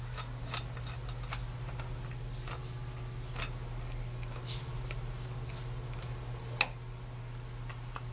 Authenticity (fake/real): real